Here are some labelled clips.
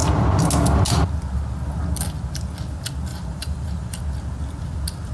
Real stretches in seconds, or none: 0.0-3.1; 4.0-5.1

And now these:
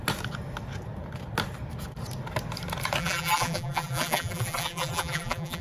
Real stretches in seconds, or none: 0.0-3.0